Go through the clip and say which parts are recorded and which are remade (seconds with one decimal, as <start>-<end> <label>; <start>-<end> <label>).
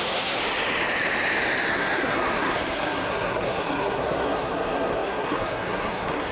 0.0-0.4 remade; 0.4-1.7 recorded; 1.7-6.3 remade